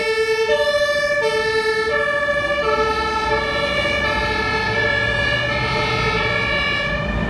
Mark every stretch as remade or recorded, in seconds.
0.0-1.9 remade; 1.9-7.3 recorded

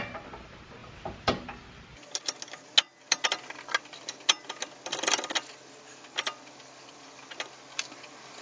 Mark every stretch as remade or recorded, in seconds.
0.0-8.4 recorded

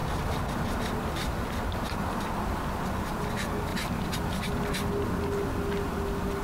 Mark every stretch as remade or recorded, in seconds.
0.0-1.2 recorded; 1.2-2.6 remade; 2.6-6.4 recorded

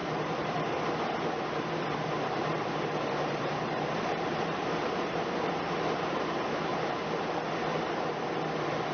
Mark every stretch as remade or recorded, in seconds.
0.0-0.9 remade; 0.9-2.4 recorded; 2.4-6.2 remade; 6.2-6.7 recorded; 6.7-7.5 remade; 7.5-8.9 recorded